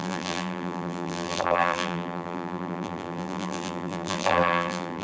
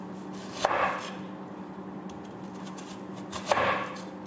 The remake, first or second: first